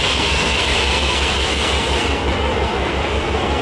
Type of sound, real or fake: fake